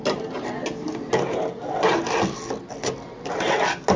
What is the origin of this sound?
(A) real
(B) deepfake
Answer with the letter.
A